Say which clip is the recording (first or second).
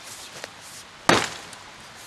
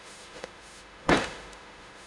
first